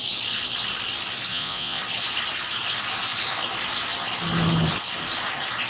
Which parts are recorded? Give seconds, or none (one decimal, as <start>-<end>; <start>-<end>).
0.0-1.3; 1.8-5.7